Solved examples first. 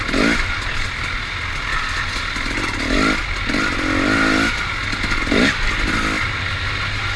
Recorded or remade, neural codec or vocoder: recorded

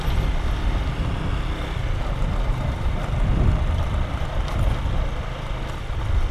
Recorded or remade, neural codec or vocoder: recorded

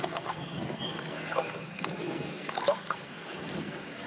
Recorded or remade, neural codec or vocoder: remade, codec, SNAC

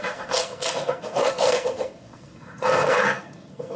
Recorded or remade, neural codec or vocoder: remade, codec, SNAC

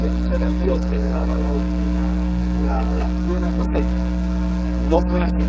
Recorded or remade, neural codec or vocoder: remade, codec, SNAC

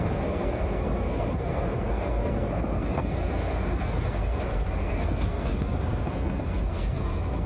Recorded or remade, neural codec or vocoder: remade, codec, SNAC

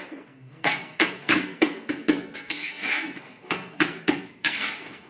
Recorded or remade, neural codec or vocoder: remade, codec, SNAC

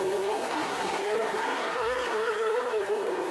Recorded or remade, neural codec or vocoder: remade, codec, SNAC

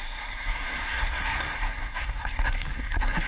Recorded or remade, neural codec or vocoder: remade, codec, SNAC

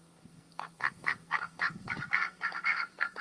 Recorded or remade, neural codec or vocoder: remade, codec, SNAC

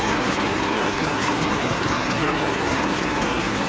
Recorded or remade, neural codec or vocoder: remade, codec, SNAC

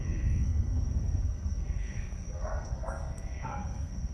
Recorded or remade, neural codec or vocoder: remade, codec, SNAC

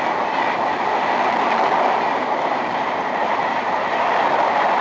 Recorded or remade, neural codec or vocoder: recorded